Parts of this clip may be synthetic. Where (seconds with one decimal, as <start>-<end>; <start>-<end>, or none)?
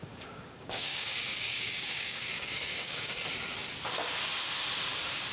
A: 0.0-3.2